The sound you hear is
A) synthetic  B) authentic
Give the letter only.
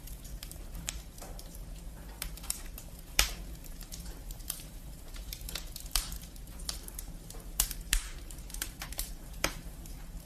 A